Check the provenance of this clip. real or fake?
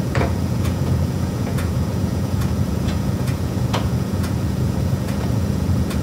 fake